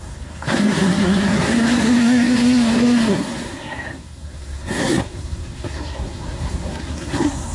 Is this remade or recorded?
remade